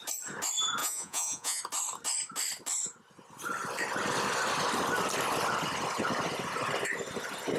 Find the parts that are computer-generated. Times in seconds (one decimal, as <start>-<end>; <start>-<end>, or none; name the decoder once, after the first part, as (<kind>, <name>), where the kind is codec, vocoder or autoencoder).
0.8-1.6 (vocoder, Vocos)